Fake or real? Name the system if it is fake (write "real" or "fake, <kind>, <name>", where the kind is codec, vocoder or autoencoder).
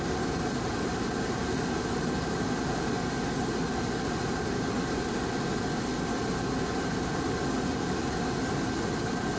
real